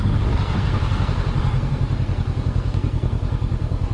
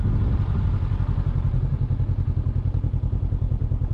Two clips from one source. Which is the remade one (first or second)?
first